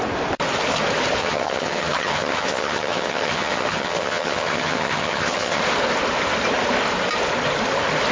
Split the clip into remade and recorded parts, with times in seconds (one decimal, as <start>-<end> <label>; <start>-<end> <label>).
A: 0.0-1.2 recorded; 1.2-5.6 remade; 5.6-8.1 recorded